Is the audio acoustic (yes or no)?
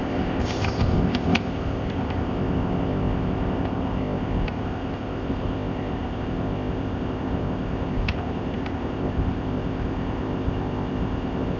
no